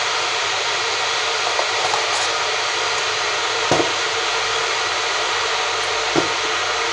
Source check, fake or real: real